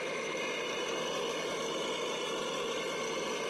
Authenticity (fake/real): real